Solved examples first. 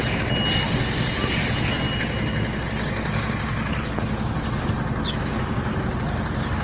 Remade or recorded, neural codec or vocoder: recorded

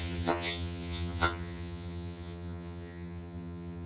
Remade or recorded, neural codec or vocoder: remade, vocoder, HiFi-GAN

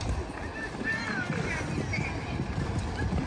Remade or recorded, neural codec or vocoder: recorded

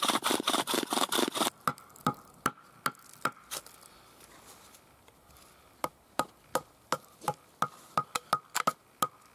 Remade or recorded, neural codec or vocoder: recorded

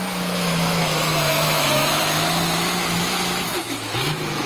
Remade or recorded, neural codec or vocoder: remade, autoencoder, DAC-VAE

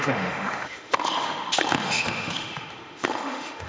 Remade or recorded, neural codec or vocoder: remade, autoencoder, DAC-VAE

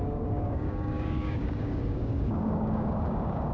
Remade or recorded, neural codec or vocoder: remade, codec, DAC